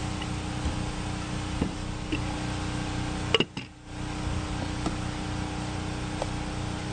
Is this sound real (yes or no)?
yes